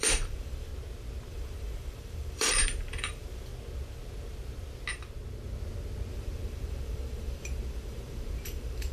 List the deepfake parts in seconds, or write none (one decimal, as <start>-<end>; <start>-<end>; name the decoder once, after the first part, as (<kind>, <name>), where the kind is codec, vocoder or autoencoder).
0.0-0.7 (vocoder, BigVGAN v2); 1.3-3.5; 6.1-8.9